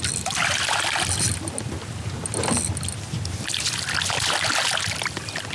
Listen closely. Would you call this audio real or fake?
real